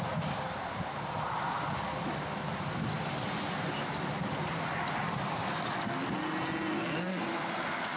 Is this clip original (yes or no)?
yes